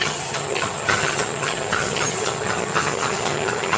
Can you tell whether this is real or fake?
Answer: fake